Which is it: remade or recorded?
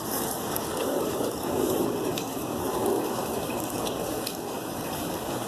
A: remade